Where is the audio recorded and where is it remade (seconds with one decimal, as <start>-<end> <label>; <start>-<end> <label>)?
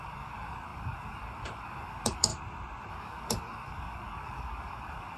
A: 0.0-2.3 remade; 2.3-2.9 recorded; 2.9-5.2 remade